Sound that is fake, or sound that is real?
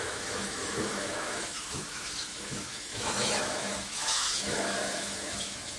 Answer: fake